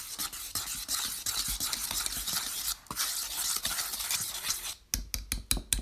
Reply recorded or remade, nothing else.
recorded